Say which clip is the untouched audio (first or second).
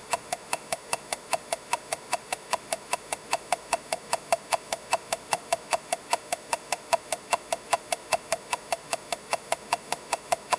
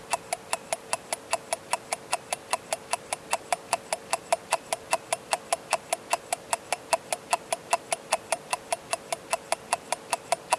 second